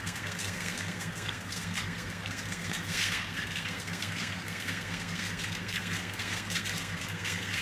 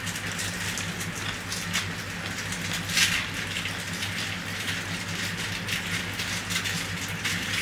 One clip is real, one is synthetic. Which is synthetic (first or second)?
first